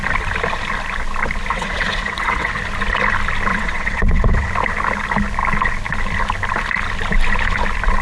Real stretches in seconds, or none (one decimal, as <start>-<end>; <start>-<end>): 0.0-1.5; 2.6-3.5; 4.5-8.0